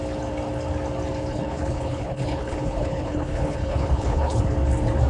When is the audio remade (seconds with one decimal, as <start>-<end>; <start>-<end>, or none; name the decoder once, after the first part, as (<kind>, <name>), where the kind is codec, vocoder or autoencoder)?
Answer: 1.3-4.4 (codec, HILCodec)